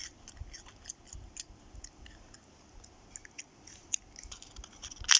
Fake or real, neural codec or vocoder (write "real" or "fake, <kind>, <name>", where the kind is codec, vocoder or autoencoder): real